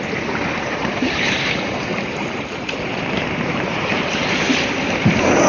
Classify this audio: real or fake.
fake